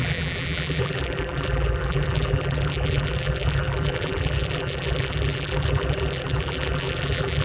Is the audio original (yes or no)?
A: no